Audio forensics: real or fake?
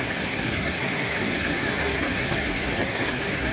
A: fake